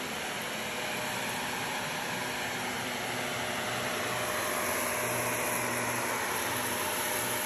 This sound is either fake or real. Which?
real